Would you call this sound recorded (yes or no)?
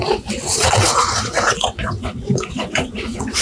no